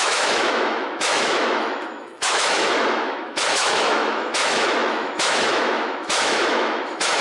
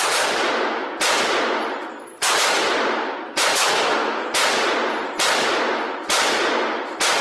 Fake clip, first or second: first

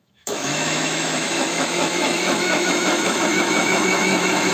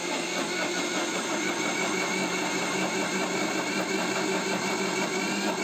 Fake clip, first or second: first